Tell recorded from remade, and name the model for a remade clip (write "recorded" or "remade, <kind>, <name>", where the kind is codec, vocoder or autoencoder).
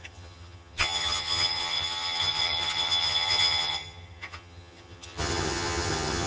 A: remade, vocoder, HiFi-GAN